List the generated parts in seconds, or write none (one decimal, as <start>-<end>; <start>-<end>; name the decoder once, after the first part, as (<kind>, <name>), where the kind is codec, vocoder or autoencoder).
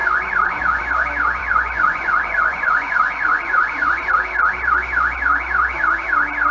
0.0-0.8 (vocoder, Vocos); 1.4-4.1